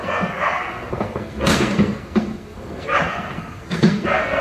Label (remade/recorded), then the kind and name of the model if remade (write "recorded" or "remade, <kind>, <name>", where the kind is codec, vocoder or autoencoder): remade, codec, SNAC